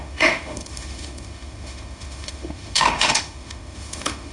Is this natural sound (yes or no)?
no